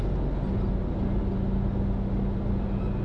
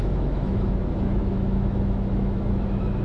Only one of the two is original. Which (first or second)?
first